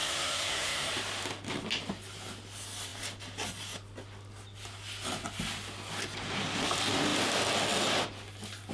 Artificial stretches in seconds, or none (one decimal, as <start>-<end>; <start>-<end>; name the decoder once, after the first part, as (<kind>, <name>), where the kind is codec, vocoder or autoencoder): 0.0-0.9 (codec, SNAC)

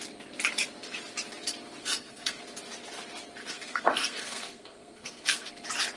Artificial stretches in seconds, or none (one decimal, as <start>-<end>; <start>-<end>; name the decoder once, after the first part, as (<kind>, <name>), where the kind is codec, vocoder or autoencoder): 1.8-2.4 (codec, SNAC); 3.4-5.5

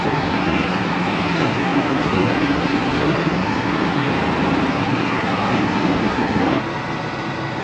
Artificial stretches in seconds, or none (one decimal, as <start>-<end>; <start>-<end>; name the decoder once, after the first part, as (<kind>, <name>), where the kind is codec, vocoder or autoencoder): 0.0-4.1 (codec, SNAC); 4.7-6.6

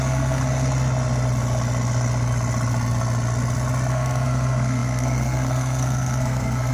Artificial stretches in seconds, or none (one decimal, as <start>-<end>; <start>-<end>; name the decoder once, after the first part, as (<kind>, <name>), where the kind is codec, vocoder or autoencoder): 0.0-0.4 (codec, SNAC); 3.9-6.7